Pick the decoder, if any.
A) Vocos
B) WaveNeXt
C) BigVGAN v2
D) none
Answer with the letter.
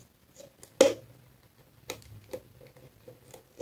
D